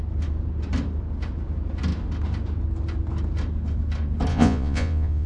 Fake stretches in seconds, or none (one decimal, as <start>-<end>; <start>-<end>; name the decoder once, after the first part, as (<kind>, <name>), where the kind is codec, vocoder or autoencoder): 4.3-5.3 (vocoder, Vocos)

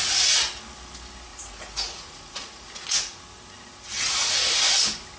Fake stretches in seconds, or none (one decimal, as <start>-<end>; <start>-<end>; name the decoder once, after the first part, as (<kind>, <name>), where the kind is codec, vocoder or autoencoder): 1.3-3.2 (vocoder, Vocos)

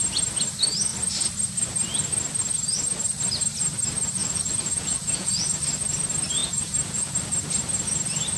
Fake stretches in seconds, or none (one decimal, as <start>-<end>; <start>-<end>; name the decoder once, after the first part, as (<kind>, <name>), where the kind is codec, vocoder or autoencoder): 4.2-5.6 (vocoder, Vocos); 6.4-7.2

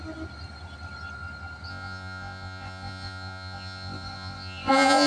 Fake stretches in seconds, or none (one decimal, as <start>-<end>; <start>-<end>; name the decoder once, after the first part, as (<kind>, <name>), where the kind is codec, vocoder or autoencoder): 1.7-5.1 (vocoder, Vocos)

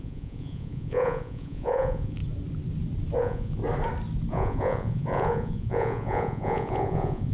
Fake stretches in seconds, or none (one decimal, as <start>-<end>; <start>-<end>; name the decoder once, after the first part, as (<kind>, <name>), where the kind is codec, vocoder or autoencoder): 0.0-2.2 (vocoder, Vocos); 3.2-3.6; 4.3-7.3

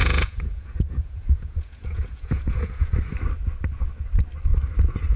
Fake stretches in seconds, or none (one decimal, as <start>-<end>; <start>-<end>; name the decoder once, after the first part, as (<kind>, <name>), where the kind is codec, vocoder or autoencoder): 0.0-2.9 (vocoder, Vocos)

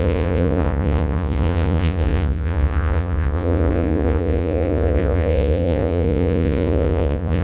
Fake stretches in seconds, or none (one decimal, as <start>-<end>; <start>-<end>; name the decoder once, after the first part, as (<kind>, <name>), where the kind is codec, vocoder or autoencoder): 0.0-7.4 (vocoder, Vocos)

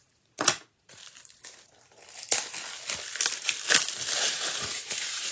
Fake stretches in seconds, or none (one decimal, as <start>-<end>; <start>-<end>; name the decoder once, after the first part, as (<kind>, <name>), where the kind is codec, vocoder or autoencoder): 0.0-1.0 (vocoder, Vocos); 4.2-5.3